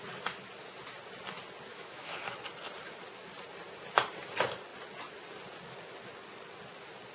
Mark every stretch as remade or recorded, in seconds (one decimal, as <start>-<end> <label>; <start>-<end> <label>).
0.0-1.7 recorded; 1.7-2.2 remade; 2.2-7.1 recorded